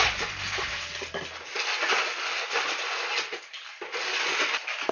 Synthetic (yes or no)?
no